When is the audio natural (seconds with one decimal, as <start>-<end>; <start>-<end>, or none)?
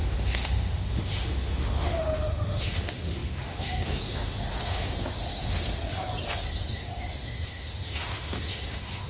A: 5.8-6.7